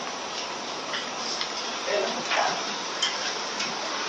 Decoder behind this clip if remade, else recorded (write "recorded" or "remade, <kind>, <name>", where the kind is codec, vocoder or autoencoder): recorded